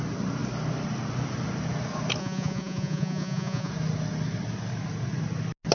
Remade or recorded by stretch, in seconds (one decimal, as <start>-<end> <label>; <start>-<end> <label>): 0.0-2.2 recorded; 2.2-3.7 remade; 3.7-5.7 recorded

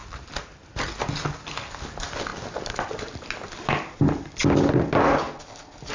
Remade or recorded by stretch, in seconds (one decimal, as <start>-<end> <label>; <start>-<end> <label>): 0.0-5.9 recorded